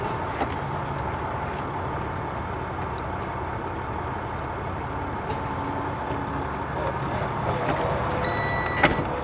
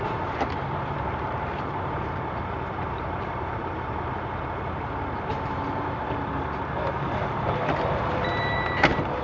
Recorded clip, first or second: first